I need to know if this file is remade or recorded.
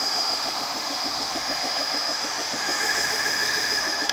remade